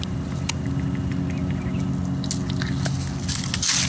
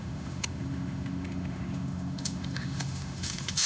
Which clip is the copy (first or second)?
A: second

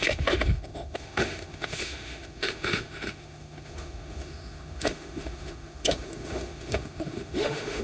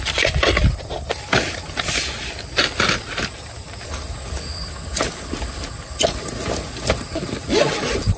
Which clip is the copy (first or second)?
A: first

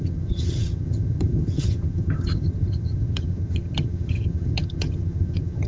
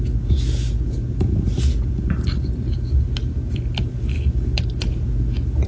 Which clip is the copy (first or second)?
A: first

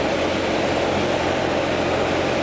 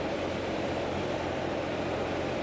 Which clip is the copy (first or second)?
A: second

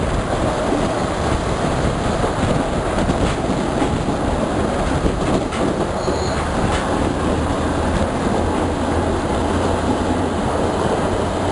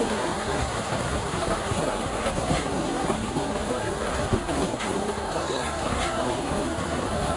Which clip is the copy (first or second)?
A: second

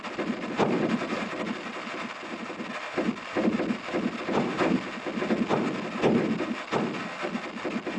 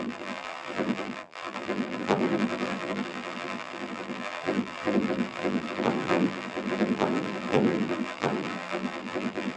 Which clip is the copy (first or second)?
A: second